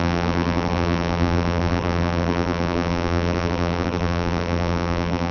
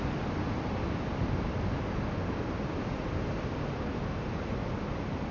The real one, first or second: second